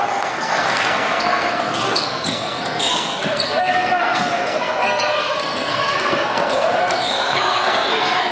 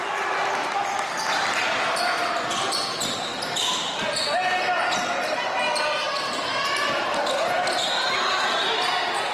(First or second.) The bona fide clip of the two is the second